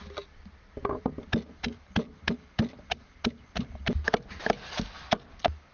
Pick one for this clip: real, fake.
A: real